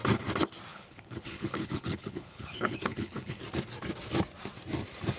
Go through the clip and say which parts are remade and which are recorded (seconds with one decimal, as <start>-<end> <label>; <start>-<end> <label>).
0.0-0.7 recorded; 0.7-3.4 remade; 3.4-5.2 recorded